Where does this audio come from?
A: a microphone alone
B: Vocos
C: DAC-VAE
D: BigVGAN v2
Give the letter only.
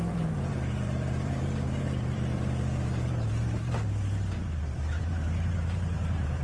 D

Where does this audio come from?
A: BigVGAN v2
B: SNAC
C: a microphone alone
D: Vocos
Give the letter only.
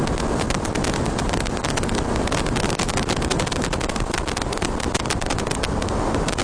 C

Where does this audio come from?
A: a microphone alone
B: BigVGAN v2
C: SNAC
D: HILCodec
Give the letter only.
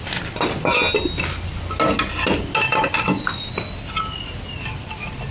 A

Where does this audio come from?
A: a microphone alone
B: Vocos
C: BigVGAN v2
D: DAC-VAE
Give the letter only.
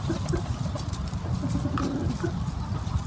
C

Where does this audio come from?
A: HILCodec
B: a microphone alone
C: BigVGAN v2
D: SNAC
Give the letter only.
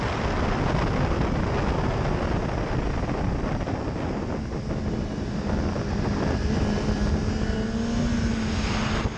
B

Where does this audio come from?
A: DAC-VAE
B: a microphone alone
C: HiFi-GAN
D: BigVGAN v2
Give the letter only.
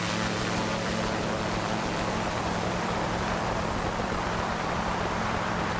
D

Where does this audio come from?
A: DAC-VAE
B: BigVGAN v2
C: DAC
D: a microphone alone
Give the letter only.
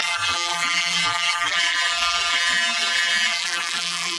B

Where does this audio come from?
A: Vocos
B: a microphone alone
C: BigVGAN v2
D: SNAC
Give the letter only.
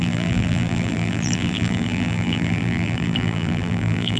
C